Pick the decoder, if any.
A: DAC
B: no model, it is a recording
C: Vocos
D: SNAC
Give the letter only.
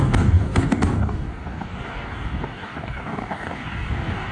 A